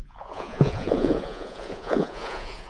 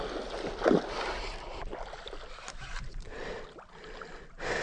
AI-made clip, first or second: first